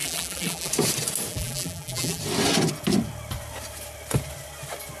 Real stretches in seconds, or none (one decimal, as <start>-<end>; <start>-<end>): 0.7-1.3; 2.2-5.0